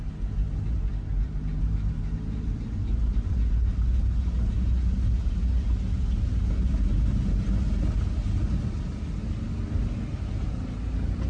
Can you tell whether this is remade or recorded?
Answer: recorded